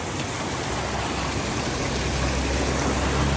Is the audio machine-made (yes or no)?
no